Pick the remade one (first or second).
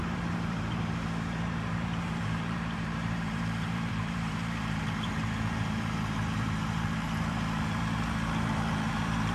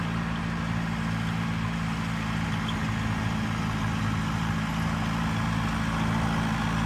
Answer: first